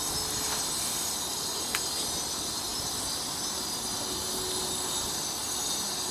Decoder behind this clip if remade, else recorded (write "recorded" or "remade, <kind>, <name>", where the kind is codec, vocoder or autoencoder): recorded